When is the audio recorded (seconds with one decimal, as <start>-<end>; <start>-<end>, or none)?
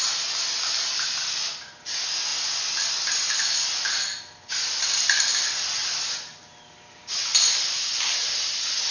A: 0.0-8.9